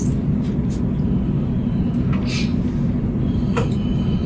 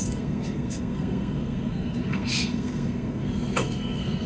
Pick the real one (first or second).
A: first